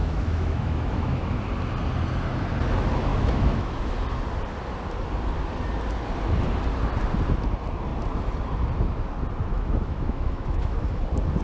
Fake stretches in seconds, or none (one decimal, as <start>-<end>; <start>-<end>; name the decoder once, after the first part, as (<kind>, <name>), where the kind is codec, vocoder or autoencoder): 0.0-1.4 (autoencoder, DAC-VAE); 3.1-3.9; 9.5-11.0

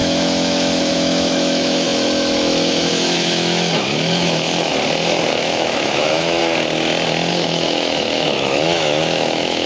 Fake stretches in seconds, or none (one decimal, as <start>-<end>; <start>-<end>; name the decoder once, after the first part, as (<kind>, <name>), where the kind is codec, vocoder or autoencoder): 0.0-4.7 (autoencoder, DAC-VAE); 5.3-6.4; 7.3-9.7

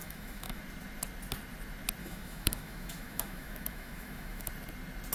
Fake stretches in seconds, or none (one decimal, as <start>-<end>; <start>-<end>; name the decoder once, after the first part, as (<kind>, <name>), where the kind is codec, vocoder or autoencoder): 0.0-0.6 (autoencoder, DAC-VAE); 2.0-4.5

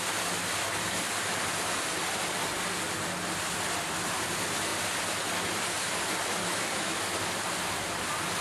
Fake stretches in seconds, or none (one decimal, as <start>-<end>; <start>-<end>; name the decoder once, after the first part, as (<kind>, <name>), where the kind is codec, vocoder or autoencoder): 6.4-7.0 (autoencoder, DAC-VAE)